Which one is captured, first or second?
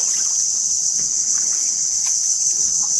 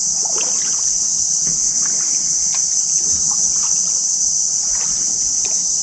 second